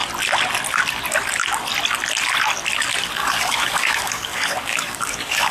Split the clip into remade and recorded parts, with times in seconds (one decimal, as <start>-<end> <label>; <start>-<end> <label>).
0.0-3.2 recorded; 3.2-5.5 remade